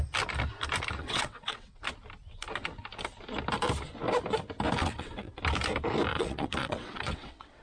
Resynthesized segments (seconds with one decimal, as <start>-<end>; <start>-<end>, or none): 1.0-1.8; 4.8-5.4; 6.1-7.6